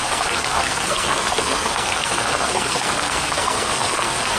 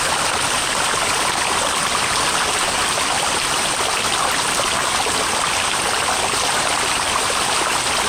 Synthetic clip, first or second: first